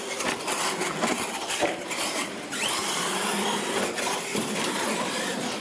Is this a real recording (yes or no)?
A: yes